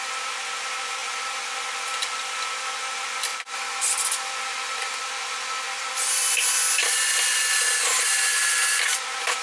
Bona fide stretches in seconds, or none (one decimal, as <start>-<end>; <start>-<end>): 0.0-9.4